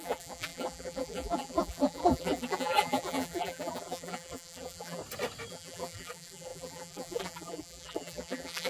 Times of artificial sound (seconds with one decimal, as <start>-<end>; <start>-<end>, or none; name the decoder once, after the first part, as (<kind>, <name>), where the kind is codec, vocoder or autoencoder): 0.0-5.0 (vocoder, BigVGAN v2); 5.5-8.7